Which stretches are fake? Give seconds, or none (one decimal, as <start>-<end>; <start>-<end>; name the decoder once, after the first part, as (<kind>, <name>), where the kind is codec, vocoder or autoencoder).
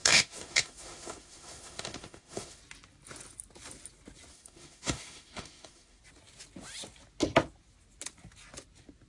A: 0.0-2.6 (autoencoder, DAC-VAE); 4.3-6.0